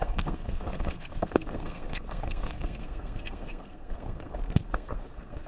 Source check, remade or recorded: remade